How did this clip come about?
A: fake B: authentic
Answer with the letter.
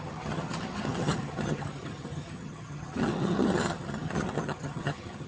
A